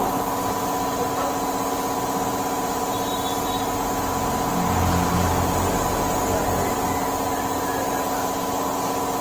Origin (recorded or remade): recorded